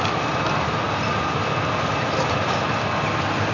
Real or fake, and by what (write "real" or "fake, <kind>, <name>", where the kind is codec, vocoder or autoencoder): real